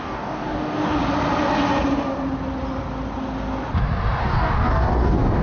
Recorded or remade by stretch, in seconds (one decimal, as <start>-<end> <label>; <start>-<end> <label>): 0.0-1.0 remade; 1.0-4.2 recorded; 4.2-5.4 remade